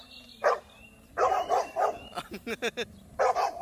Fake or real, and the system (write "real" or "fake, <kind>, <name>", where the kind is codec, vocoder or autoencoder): fake, vocoder, BigVGAN v2